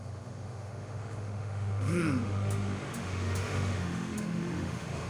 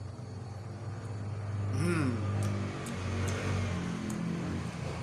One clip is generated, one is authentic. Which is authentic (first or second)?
second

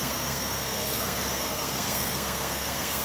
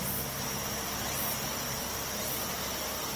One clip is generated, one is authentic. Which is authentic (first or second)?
second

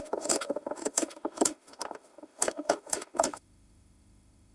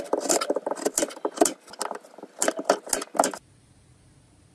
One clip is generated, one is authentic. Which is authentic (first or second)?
second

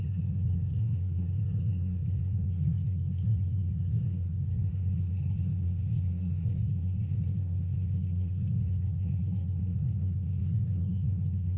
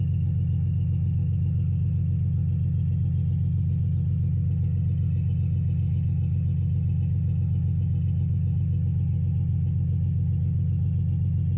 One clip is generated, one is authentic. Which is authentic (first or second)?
second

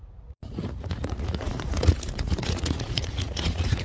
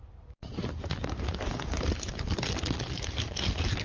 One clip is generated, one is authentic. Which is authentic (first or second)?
second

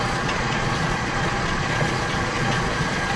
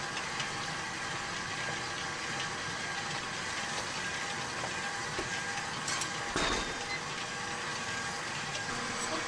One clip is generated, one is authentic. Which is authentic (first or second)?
second